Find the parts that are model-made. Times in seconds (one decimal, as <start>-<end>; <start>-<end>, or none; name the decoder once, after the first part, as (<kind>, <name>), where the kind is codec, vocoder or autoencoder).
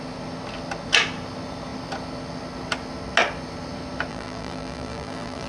4.1-5.5 (vocoder, BigVGAN v2)